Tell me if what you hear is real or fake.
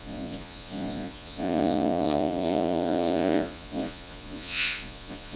fake